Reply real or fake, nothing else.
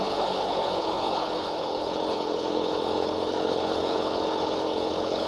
fake